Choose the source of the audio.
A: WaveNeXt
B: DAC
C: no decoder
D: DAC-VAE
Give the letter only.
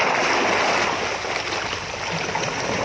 C